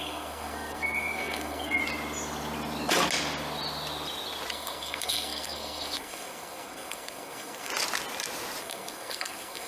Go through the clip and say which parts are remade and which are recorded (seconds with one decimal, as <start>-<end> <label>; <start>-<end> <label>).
0.0-1.8 remade; 1.8-4.5 recorded; 4.5-7.7 remade; 7.7-8.6 recorded; 8.6-9.7 remade